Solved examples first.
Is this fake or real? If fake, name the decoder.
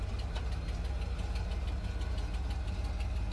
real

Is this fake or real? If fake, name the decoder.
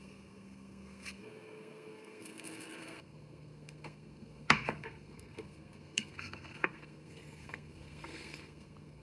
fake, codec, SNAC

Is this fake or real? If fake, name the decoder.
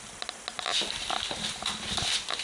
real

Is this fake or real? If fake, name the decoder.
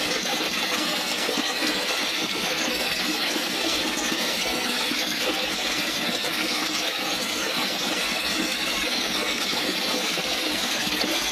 fake, codec, SNAC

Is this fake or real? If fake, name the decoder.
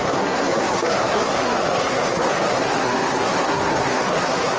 fake, codec, SNAC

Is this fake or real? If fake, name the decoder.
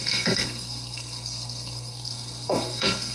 fake, codec, SNAC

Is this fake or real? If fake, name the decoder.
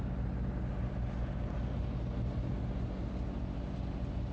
real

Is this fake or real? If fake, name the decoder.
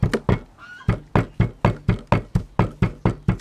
real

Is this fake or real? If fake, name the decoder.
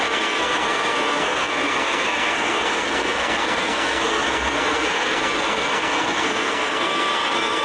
fake, codec, SNAC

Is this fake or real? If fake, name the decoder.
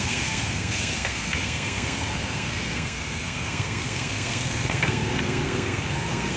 fake, codec, SNAC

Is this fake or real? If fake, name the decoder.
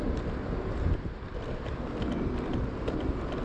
real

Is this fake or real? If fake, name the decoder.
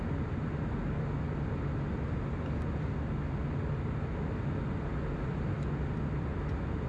real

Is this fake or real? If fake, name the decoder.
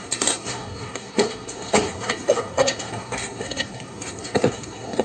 fake, codec, SNAC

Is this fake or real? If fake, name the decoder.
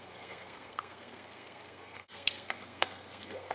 fake, codec, SNAC